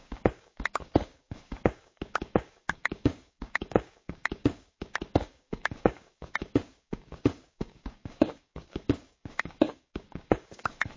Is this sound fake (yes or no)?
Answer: yes